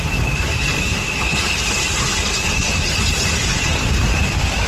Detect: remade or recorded remade